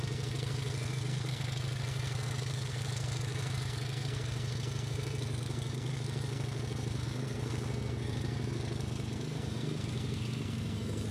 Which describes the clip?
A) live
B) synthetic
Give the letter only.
B